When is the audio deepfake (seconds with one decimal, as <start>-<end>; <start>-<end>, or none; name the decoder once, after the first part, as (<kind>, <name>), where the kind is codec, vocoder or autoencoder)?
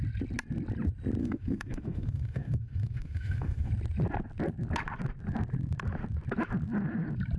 1.2-3.7 (autoencoder, DAC-VAE)